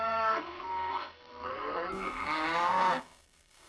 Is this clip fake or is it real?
fake